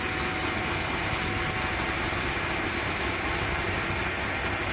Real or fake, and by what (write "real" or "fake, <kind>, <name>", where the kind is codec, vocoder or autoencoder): real